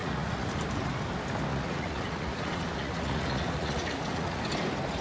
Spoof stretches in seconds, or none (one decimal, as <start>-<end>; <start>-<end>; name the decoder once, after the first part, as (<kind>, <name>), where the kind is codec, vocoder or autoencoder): 0.0-0.6 (vocoder, Vocos); 1.5-4.4